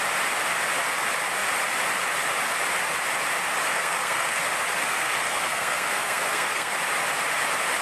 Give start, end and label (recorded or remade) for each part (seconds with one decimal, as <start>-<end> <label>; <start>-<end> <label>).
0.0-3.7 recorded; 3.7-4.4 remade; 4.4-4.9 recorded; 4.9-6.7 remade; 6.7-7.8 recorded